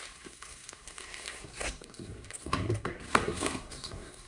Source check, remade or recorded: remade